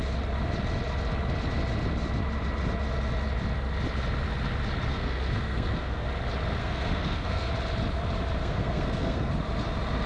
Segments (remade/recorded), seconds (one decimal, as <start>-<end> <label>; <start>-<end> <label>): 0.0-4.9 recorded; 4.9-6.1 remade; 6.1-6.6 recorded; 6.6-7.5 remade; 7.5-8.4 recorded; 8.4-9.3 remade; 9.3-10.1 recorded